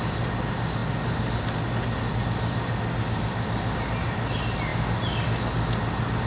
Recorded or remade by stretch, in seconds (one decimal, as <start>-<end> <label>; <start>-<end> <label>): 0.0-6.3 recorded